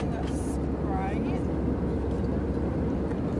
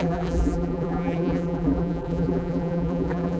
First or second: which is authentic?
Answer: first